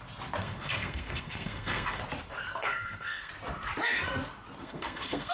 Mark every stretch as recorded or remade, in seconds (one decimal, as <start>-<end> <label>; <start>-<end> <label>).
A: 0.0-0.4 recorded; 0.4-2.0 remade; 2.0-2.6 recorded; 2.6-3.3 remade; 3.3-4.6 recorded; 4.6-5.3 remade

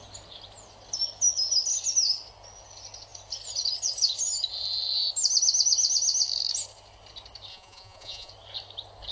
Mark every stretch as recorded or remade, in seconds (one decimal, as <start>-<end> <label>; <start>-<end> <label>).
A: 0.0-7.5 recorded; 7.5-8.3 remade; 8.3-9.1 recorded